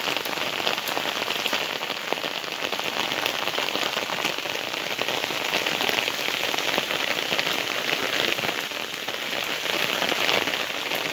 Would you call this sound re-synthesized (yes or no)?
no